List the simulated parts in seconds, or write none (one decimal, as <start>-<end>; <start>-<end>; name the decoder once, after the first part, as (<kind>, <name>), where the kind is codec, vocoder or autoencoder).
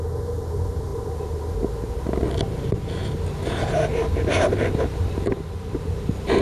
none